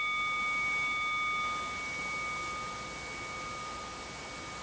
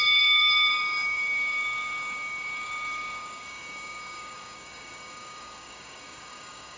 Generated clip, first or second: second